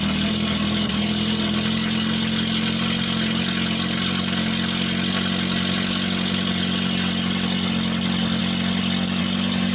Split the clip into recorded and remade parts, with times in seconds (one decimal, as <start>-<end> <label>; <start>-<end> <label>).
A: 0.0-9.7 recorded